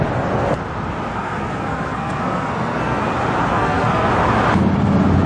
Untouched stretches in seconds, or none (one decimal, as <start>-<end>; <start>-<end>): 0.0-1.1; 3.0-3.5; 4.1-5.3